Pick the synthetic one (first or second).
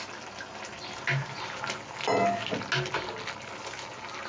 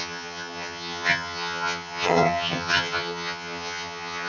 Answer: second